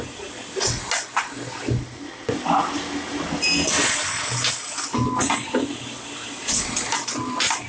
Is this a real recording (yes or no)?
yes